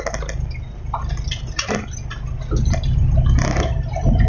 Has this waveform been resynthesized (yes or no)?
no